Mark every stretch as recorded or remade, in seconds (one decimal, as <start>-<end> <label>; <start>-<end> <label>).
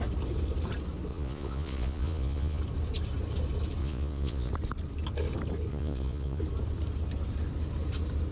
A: 0.0-1.1 recorded; 1.1-2.6 remade; 2.6-3.8 recorded; 3.8-4.5 remade; 4.5-5.7 recorded; 5.7-6.4 remade; 6.4-8.3 recorded